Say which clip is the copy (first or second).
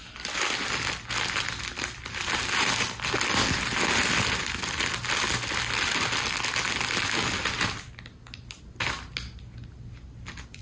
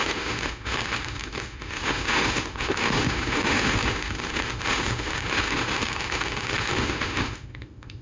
second